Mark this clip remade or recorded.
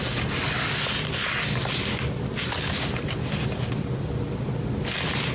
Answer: recorded